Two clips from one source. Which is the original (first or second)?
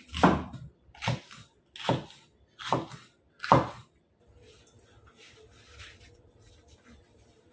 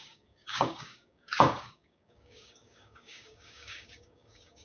first